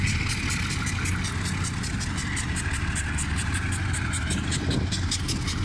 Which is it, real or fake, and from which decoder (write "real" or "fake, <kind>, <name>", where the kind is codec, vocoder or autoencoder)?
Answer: real